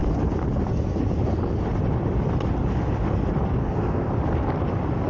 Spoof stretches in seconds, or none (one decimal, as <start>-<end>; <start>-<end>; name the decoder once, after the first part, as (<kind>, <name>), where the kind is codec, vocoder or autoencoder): 3.6-4.1 (codec, SNAC)

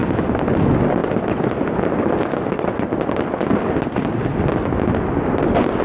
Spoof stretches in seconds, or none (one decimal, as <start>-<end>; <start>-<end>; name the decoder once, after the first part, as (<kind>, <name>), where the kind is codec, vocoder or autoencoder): none